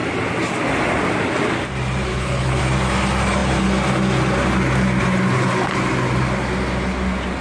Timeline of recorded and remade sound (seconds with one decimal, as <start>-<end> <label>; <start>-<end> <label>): 0.0-2.1 recorded; 2.1-2.6 remade; 2.6-7.4 recorded